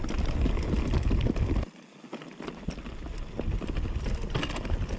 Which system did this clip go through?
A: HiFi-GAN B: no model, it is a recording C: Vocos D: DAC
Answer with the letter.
B